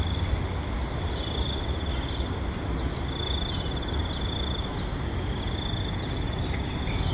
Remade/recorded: recorded